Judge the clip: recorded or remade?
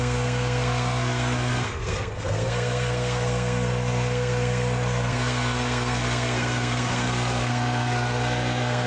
remade